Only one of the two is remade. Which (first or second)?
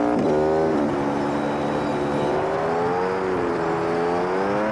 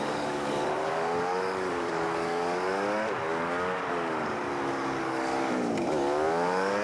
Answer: second